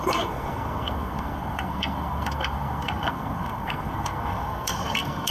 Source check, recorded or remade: remade